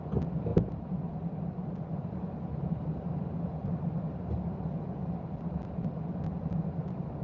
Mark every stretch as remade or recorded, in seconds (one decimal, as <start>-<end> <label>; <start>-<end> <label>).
0.0-7.2 recorded